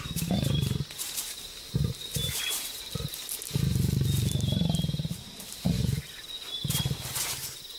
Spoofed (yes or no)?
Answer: no